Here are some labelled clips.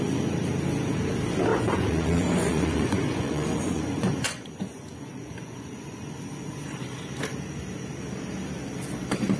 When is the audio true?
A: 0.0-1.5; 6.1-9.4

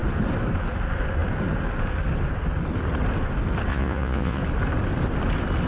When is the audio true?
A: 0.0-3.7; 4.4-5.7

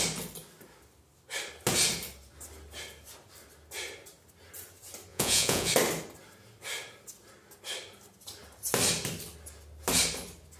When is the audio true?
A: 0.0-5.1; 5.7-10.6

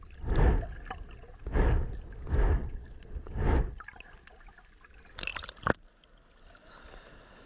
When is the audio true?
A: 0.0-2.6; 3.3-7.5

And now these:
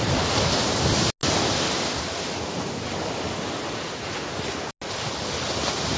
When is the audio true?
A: 0.0-6.0